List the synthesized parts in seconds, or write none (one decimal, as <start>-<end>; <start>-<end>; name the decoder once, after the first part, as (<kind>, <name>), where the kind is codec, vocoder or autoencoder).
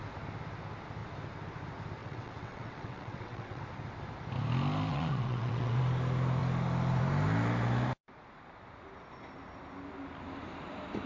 2.0-3.6 (vocoder, WaveNeXt); 4.9-5.8